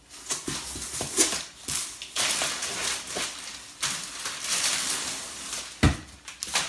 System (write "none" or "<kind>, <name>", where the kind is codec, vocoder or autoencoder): none